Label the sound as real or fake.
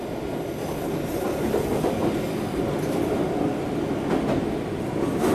real